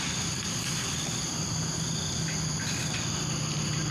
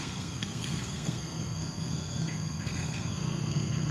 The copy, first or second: second